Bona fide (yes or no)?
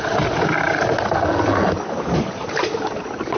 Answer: yes